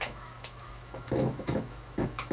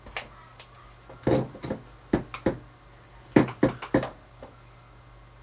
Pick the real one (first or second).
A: second